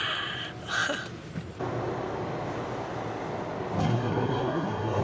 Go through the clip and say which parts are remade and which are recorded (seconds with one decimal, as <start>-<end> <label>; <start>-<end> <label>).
0.0-3.8 recorded; 3.8-5.0 remade

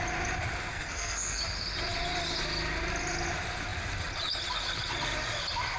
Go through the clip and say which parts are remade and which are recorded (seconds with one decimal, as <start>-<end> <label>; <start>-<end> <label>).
0.0-0.7 recorded; 0.7-1.4 remade; 1.4-5.8 recorded

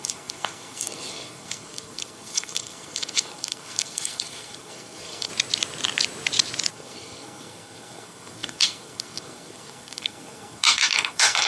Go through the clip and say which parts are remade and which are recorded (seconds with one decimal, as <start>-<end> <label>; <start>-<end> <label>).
0.0-5.3 remade; 5.3-6.7 recorded; 6.7-11.5 remade

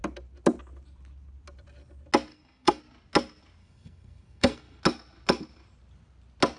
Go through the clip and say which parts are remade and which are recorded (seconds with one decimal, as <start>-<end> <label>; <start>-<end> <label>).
0.0-2.3 recorded; 2.3-2.8 remade; 2.8-3.6 recorded; 3.6-4.8 remade; 4.8-6.6 recorded

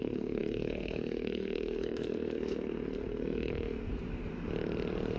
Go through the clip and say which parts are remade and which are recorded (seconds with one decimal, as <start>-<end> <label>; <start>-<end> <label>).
0.0-3.9 remade; 3.9-5.2 recorded

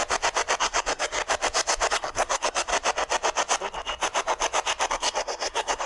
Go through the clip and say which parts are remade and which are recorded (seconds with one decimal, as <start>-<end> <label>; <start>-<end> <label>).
0.0-0.6 recorded; 0.6-1.2 remade; 1.2-1.9 recorded; 1.9-2.7 remade; 2.7-4.9 recorded; 4.9-5.9 remade

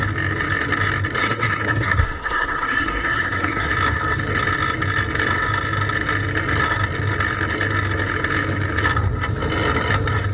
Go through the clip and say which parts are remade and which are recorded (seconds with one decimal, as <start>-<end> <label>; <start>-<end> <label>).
0.0-1.2 recorded; 1.2-3.7 remade; 3.7-10.3 recorded